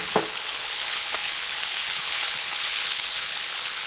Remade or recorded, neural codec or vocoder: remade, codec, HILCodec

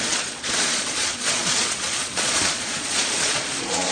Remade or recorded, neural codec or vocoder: remade, vocoder, Vocos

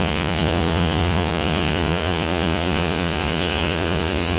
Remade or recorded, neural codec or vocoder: remade, vocoder, Vocos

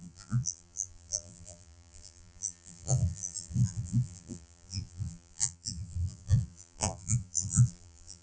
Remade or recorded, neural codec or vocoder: remade, vocoder, BigVGAN v2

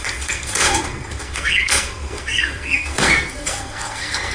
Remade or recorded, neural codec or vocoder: remade, codec, SNAC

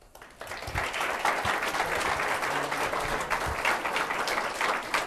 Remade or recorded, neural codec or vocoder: recorded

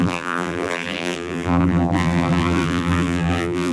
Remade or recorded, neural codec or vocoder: remade, vocoder, BigVGAN v2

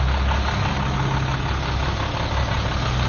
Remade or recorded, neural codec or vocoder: recorded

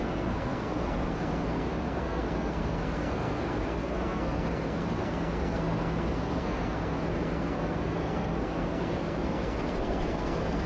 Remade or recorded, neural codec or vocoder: remade, codec, SNAC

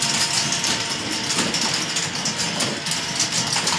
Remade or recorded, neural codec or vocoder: recorded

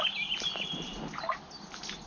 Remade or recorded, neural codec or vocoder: recorded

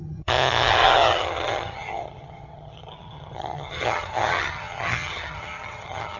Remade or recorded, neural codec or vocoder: remade, vocoder, HiFi-GAN